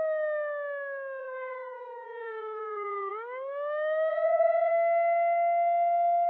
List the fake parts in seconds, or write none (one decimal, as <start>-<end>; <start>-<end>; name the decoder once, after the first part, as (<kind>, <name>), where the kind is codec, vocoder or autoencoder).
1.2-3.1 (vocoder, Vocos); 4.1-4.7